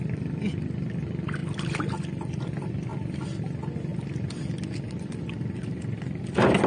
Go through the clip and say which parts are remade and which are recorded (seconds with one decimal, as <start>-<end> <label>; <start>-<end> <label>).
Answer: 0.0-6.7 recorded